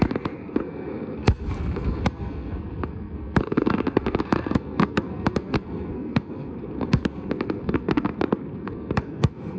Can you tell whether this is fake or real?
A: fake